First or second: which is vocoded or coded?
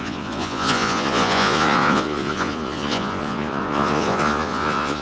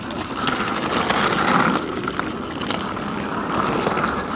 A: first